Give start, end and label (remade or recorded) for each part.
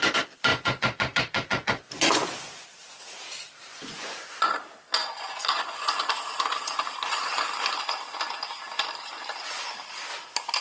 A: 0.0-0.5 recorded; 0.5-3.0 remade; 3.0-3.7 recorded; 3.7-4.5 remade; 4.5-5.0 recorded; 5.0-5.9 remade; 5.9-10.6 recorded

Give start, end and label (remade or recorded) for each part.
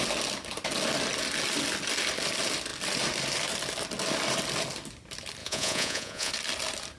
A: 0.0-5.4 recorded; 5.4-6.3 remade; 6.3-7.0 recorded